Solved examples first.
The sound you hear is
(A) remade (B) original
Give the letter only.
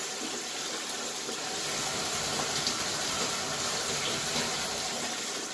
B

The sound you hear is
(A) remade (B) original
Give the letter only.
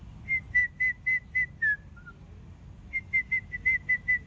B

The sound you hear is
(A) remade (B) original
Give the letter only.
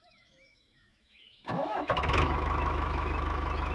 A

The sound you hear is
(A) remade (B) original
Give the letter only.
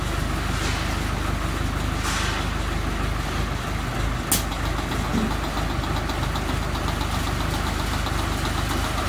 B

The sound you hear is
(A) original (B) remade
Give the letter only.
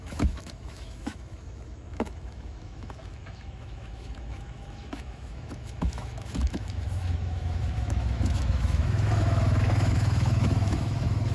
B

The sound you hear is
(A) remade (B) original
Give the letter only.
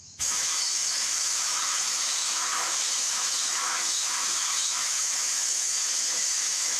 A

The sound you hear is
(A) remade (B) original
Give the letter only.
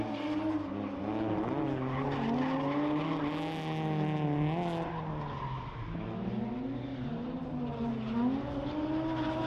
B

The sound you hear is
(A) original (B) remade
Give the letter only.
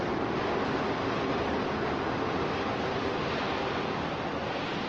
A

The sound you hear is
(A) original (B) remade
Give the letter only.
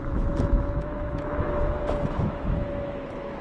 B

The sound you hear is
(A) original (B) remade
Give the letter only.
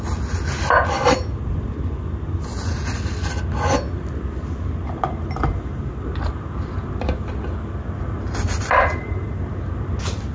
A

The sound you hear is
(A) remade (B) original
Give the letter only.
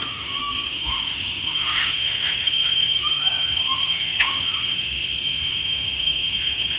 A